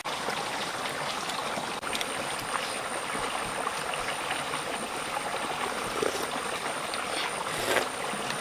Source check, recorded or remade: recorded